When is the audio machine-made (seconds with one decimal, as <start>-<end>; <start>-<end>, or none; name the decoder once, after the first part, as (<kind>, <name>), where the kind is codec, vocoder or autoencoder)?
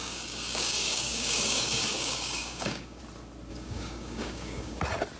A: 0.0-3.0 (codec, DAC); 3.5-4.8